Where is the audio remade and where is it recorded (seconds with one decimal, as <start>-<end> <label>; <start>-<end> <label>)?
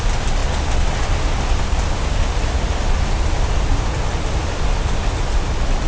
0.0-5.9 recorded